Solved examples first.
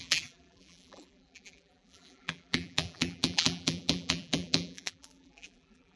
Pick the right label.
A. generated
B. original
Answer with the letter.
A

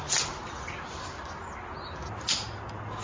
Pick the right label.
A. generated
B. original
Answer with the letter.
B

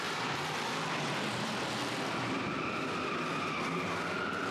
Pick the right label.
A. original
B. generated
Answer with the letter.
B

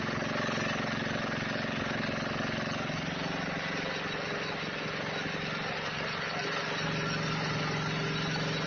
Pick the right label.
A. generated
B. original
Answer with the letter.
B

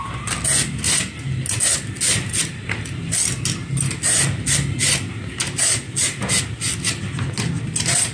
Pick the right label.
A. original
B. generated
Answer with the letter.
A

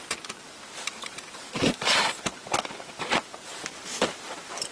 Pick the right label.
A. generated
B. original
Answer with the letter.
A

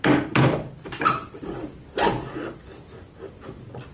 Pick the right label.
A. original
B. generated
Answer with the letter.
A